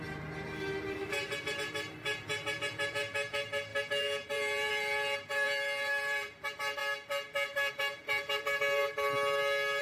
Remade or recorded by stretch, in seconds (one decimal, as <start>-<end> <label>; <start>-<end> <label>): 0.0-6.8 remade; 6.8-7.7 recorded; 7.7-8.9 remade; 8.9-9.8 recorded